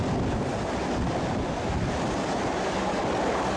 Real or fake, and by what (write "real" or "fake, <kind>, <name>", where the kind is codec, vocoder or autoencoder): real